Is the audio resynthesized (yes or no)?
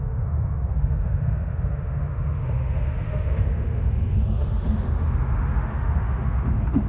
yes